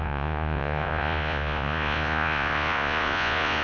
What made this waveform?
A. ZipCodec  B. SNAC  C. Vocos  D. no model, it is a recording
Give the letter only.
C